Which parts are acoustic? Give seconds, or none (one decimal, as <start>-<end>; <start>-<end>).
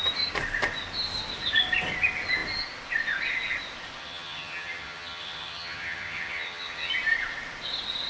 0.0-4.0; 6.9-8.1